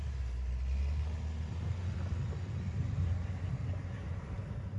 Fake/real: real